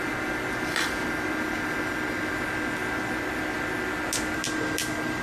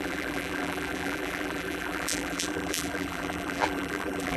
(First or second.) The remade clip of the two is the second